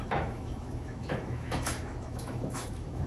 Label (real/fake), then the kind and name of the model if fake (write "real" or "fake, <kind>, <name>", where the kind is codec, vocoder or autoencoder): fake, autoencoder, DAC-VAE